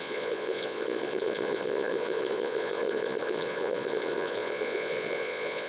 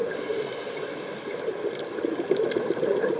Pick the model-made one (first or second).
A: first